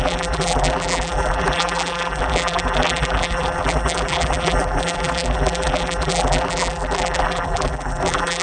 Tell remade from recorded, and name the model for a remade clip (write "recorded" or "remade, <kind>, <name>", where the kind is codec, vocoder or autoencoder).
remade, vocoder, BigVGAN v2